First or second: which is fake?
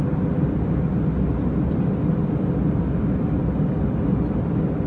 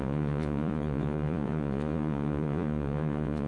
second